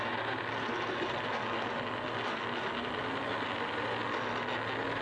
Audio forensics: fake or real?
real